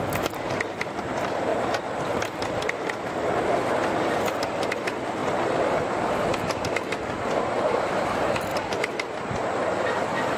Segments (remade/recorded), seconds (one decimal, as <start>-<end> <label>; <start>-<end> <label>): 0.0-10.4 recorded